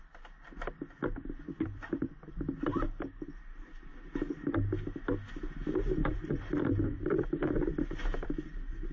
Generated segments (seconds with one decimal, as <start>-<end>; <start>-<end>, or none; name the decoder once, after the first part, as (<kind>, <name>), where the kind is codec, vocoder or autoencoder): 1.0-2.1 (vocoder, BigVGAN v2); 6.0-7.8